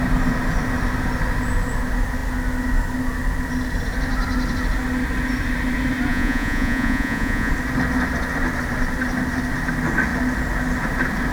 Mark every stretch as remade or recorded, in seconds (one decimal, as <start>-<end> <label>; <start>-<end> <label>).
0.0-6.1 recorded; 6.1-7.5 remade; 7.5-11.3 recorded